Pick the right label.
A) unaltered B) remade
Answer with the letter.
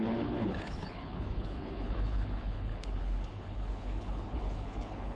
B